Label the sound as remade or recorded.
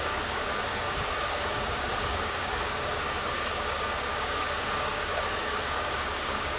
remade